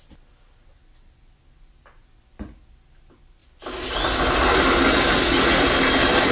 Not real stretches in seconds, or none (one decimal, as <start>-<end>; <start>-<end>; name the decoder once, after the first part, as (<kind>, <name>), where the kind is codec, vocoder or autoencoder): none